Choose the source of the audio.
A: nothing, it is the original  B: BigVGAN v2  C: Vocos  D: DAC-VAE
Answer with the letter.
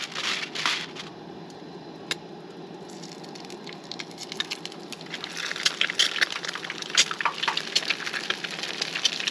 A